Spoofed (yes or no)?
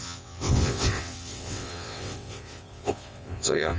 yes